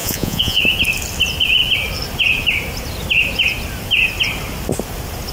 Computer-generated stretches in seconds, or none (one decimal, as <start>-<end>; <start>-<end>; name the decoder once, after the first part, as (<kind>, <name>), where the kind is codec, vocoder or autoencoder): 0.0-0.6 (vocoder, Vocos)